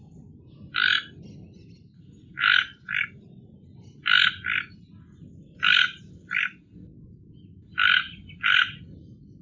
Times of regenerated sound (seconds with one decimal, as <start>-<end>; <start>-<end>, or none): none